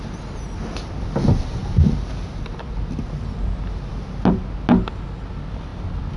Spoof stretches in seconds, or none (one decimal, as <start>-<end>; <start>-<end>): none